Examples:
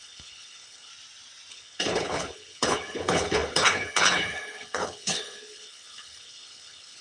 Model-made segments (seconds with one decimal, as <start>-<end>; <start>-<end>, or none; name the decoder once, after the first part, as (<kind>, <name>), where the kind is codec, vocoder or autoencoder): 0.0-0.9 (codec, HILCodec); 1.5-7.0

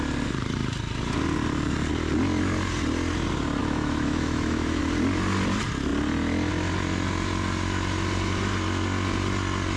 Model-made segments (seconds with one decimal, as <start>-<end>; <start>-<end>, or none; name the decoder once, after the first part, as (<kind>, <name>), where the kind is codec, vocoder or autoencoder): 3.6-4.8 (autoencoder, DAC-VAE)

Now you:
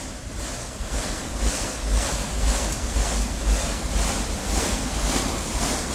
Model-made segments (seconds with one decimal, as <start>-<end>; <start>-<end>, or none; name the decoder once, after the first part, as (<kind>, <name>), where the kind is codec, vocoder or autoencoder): 0.6-3.9 (codec, SNAC); 4.4-5.9

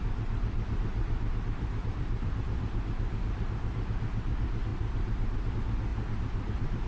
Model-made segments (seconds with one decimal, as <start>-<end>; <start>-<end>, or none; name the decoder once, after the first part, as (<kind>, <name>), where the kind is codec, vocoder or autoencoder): 0.9-2.4 (vocoder, BigVGAN v2); 4.7-5.5; 5.9-6.9